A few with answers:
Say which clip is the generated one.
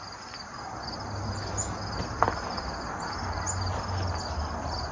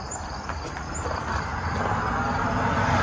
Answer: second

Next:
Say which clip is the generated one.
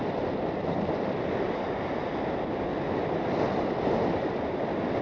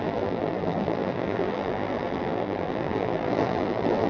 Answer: second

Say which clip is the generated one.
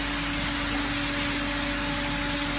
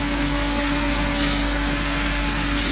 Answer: second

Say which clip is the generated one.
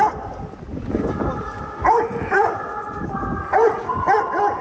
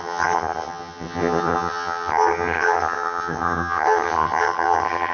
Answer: second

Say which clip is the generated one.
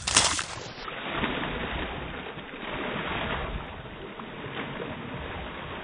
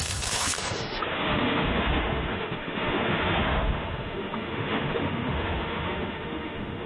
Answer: second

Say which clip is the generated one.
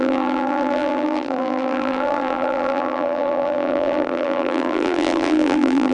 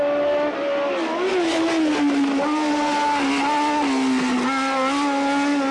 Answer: first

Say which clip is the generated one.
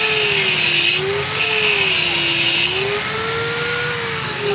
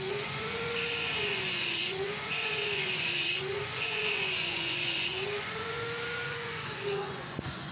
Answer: second